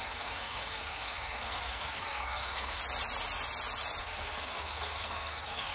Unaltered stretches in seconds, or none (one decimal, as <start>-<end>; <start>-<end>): 2.8-4.0